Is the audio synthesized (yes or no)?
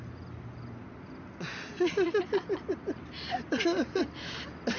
no